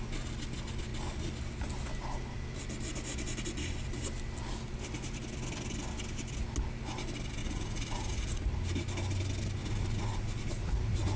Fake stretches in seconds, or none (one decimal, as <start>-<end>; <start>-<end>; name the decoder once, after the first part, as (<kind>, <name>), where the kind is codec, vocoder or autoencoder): 7.4-8.4 (vocoder, Vocos); 9.6-11.2